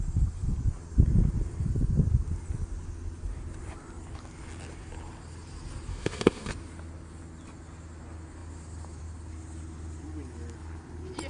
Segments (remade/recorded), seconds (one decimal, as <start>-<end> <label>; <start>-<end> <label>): 0.0-5.9 recorded; 5.9-6.5 remade; 6.5-11.3 recorded